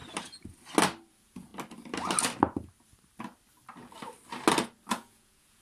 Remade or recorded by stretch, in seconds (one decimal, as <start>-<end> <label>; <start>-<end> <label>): 0.0-1.1 recorded; 1.1-1.5 remade; 1.5-4.9 recorded; 4.9-5.6 remade